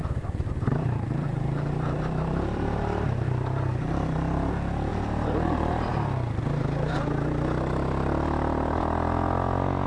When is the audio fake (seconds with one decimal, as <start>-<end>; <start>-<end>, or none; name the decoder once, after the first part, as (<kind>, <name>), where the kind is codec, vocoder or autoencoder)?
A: 0.0-4.5 (vocoder, BigVGAN v2); 4.9-5.9